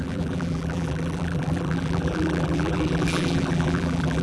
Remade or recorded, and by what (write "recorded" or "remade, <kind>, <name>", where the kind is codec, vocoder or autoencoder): remade, vocoder, BigVGAN v2